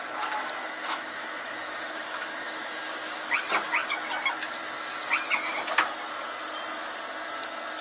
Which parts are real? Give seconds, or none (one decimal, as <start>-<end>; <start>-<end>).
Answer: 0.0-0.6; 3.3-7.8